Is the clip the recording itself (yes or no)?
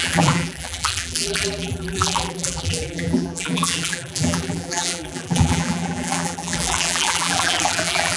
no